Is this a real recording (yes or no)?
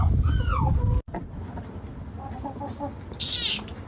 yes